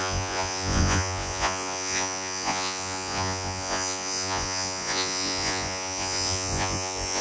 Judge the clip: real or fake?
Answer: fake